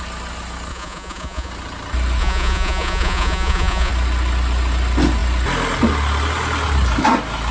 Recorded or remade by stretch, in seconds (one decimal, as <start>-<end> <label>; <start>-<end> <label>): 0.0-0.7 recorded; 0.7-1.5 remade; 1.5-2.2 recorded; 2.2-3.9 remade; 3.9-7.5 recorded